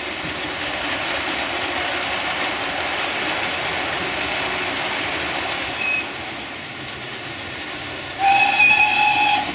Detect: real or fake real